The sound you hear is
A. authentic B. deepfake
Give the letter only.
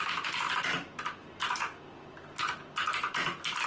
A